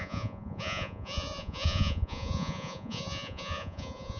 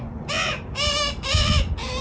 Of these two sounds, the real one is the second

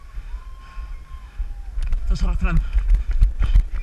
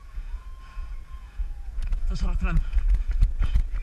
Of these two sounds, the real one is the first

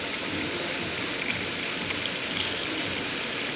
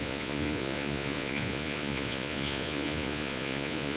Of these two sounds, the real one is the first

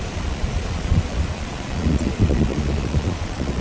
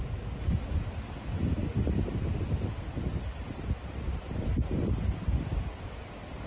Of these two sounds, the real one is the second